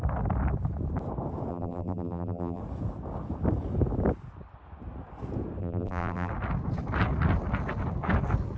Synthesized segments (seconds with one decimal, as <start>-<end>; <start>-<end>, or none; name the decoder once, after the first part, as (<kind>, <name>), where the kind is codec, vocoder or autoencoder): 1.5-2.6 (vocoder, BigVGAN v2); 5.6-6.3